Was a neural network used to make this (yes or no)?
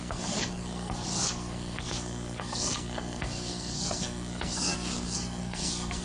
yes